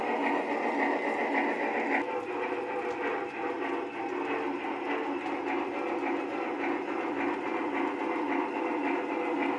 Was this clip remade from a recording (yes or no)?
no